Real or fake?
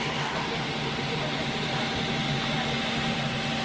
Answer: real